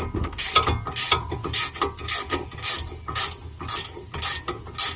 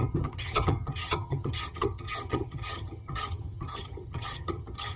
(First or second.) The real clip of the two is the first